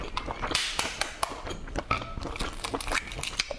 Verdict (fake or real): real